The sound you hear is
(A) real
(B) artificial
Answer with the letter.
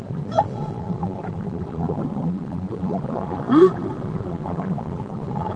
B